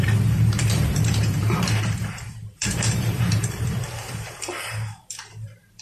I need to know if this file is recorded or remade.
remade